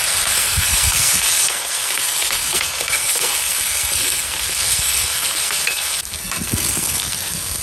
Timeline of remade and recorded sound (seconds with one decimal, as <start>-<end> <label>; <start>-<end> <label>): 0.0-7.6 remade